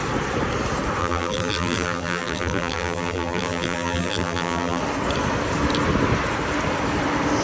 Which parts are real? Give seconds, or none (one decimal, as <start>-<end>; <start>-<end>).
0.0-1.0; 4.8-7.4